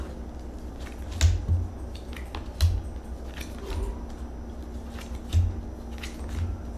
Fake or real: real